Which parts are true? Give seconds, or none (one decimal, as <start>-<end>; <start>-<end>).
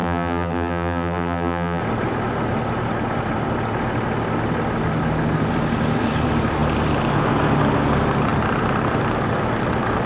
1.8-10.1